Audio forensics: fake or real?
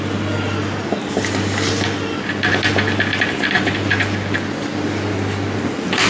real